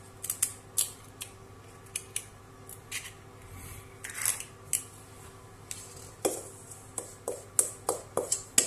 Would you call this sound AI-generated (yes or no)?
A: no